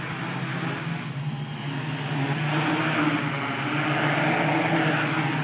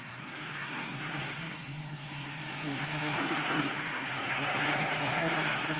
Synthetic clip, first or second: second